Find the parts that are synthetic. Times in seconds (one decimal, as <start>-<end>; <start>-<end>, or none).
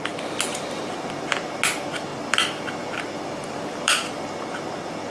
2.1-4.2